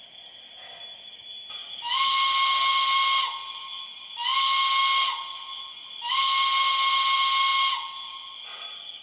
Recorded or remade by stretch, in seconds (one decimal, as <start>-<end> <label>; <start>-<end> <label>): 0.0-9.0 recorded